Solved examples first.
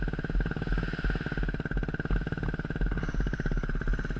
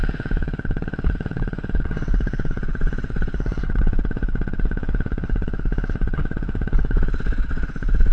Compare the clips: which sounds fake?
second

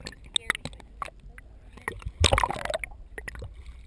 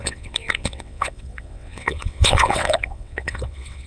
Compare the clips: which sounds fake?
second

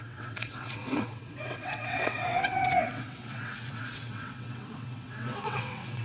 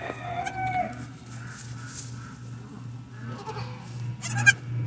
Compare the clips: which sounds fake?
first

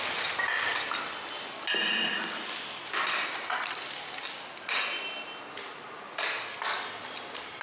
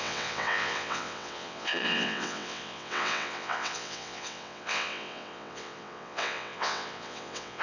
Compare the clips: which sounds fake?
second